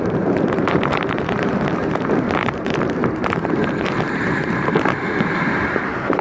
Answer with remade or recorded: remade